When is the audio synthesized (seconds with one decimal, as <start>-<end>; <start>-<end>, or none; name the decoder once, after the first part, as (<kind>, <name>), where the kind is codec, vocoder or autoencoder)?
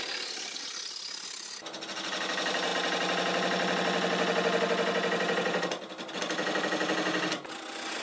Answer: none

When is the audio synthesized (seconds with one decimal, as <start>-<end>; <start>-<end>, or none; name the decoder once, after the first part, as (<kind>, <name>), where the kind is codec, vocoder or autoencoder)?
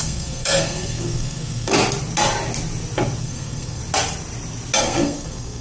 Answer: 0.0-1.7 (codec, SNAC); 3.2-3.8; 4.8-5.6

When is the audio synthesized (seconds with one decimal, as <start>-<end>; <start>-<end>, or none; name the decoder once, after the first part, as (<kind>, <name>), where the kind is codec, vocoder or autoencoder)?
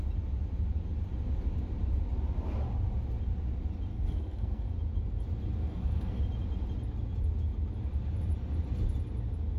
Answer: 3.9-4.7 (codec, SNAC); 5.6-6.2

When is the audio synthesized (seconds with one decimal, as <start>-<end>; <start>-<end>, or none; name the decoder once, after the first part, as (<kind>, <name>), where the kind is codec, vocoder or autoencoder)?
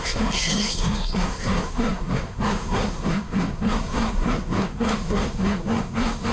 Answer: 0.0-6.3 (codec, SNAC)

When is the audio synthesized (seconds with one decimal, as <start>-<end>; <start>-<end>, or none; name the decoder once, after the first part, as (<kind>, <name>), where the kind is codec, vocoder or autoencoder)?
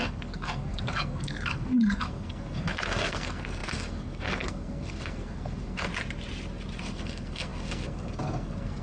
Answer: 0.0-5.9 (codec, SNAC); 6.8-8.8